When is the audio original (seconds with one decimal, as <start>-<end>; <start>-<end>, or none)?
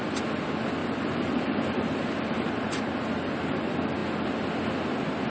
0.0-0.8; 2.8-5.3